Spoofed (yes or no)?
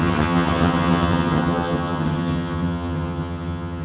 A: yes